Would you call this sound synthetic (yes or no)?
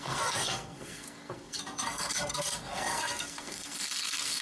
yes